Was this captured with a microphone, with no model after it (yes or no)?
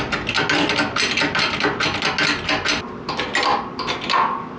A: yes